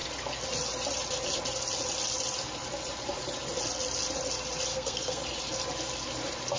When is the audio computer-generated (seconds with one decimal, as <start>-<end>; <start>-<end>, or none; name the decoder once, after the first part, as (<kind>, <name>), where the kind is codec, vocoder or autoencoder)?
4.7-5.2 (codec, SNAC)